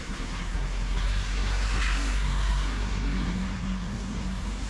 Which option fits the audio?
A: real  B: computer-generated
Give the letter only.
B